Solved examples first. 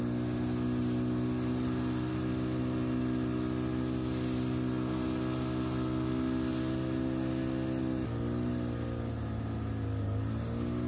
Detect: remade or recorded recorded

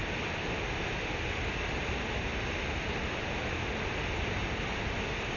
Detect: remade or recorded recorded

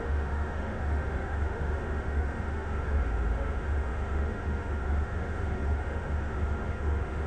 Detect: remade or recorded remade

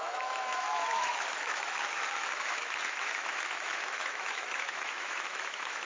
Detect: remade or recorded remade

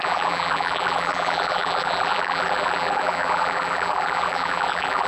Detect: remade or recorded remade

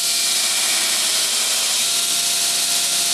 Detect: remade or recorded recorded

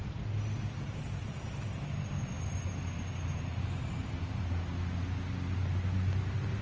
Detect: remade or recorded recorded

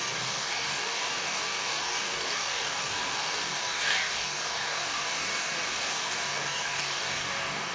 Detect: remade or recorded remade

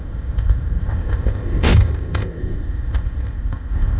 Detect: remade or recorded remade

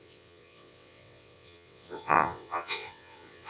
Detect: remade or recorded remade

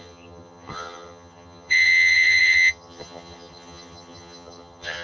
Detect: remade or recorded remade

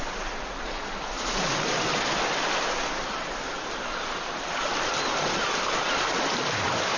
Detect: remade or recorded recorded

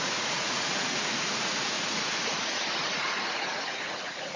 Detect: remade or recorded remade